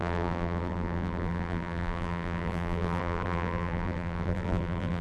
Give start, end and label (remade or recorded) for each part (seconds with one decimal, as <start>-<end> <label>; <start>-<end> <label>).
0.0-5.0 remade